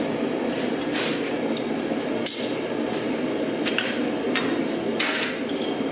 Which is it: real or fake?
real